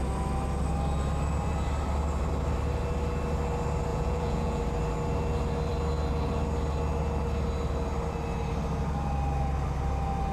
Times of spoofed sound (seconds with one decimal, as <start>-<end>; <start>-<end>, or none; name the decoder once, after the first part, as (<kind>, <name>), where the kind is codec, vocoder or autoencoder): 3.9-4.6 (vocoder, Vocos)